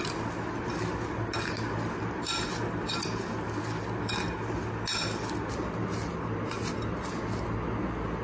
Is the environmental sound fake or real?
real